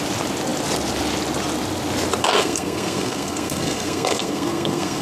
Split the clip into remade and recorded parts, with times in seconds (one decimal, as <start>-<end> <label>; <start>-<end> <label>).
0.0-2.2 recorded; 2.2-5.0 remade